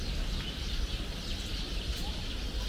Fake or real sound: real